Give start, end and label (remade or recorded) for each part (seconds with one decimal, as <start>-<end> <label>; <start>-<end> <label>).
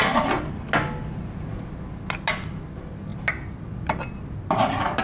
0.0-5.0 recorded